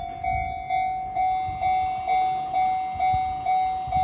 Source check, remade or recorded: recorded